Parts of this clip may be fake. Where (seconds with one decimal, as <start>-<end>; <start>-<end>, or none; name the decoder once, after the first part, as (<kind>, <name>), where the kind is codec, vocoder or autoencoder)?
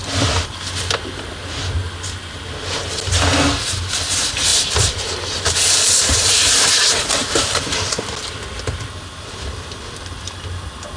4.5-7.9 (vocoder, BigVGAN v2)